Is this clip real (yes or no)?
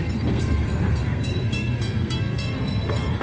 no